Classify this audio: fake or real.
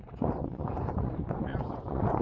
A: fake